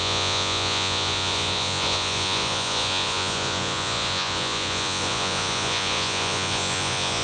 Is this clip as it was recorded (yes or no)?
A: no